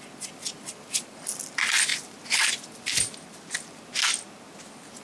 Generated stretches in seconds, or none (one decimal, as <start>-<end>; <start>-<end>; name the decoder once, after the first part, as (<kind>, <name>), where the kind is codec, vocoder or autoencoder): 1.9-2.5 (vocoder, BigVGAN v2)